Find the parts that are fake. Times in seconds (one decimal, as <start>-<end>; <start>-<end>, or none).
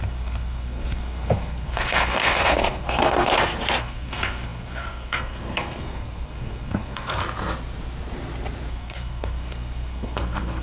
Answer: 0.0-3.3; 3.8-7.2; 8.7-10.6